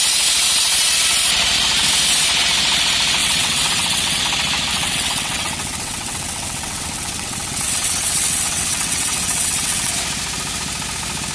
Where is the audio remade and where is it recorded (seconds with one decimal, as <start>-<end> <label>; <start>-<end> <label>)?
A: 0.0-3.2 recorded; 3.2-4.2 remade; 4.2-4.7 recorded; 4.7-9.9 remade; 9.9-11.3 recorded